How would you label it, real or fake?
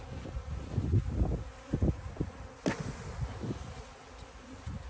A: real